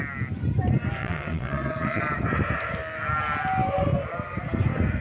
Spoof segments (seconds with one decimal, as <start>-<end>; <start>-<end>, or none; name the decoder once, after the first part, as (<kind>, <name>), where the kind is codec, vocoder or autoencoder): 1.0-2.0 (vocoder, Vocos)